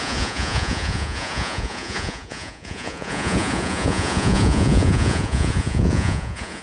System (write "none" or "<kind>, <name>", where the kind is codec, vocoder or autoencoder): vocoder, Vocos